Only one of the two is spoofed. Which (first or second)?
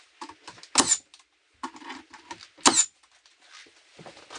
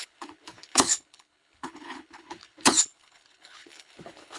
second